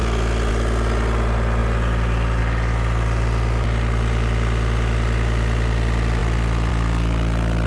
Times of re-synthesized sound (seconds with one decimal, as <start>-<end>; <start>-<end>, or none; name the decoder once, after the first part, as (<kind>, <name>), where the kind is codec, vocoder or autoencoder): none